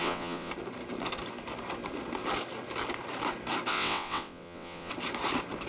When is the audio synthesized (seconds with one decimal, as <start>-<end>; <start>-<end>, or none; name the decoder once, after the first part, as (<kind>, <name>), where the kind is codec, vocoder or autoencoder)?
0.0-0.5 (vocoder, WaveNeXt); 3.7-4.9